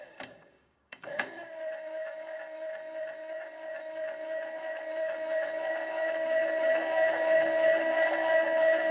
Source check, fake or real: fake